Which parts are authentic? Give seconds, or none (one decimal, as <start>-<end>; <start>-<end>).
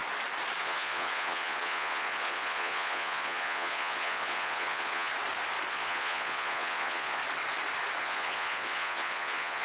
0.0-0.6; 5.1-5.7; 7.2-8.0